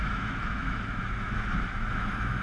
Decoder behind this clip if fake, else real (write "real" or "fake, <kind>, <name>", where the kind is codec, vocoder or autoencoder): fake, autoencoder, DAC-VAE